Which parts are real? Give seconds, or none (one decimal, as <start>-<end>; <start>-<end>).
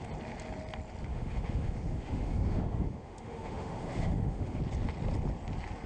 0.0-1.1; 4.6-5.9